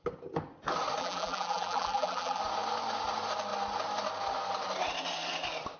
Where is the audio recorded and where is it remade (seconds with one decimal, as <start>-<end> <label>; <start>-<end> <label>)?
0.0-1.0 recorded; 1.0-2.4 remade; 2.4-5.8 recorded